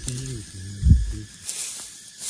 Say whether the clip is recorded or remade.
recorded